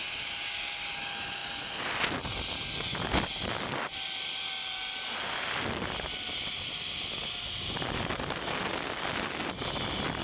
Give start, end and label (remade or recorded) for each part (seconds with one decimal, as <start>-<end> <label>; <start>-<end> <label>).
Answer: 0.0-10.2 recorded